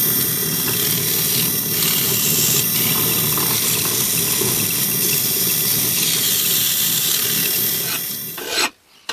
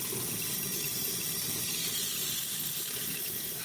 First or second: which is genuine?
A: first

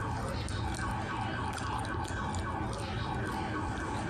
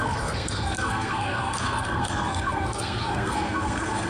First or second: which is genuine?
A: first